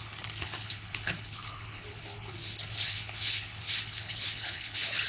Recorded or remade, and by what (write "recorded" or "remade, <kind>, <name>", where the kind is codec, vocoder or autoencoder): remade, codec, HILCodec